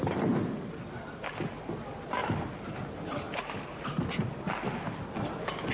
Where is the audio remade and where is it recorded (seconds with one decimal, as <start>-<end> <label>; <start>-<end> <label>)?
0.0-5.7 recorded